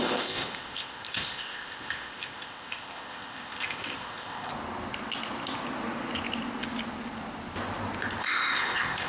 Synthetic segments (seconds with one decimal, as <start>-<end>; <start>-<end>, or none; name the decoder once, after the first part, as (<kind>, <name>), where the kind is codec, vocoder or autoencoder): 0.0-4.5 (codec, ZipCodec); 8.2-9.1